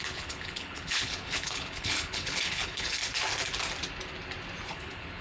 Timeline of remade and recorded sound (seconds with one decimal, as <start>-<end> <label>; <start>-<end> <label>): 0.0-3.0 remade; 3.0-4.7 recorded; 4.7-5.2 remade